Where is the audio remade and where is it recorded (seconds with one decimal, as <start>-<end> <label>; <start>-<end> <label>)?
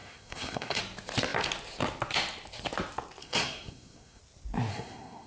0.0-0.8 remade; 0.8-3.2 recorded; 3.2-4.2 remade; 4.2-4.7 recorded; 4.7-5.3 remade